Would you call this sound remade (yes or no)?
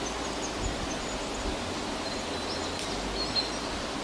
no